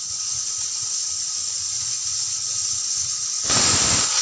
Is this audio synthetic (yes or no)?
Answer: yes